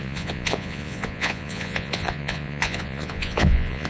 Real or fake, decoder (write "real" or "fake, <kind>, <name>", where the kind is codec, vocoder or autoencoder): fake, vocoder, Vocos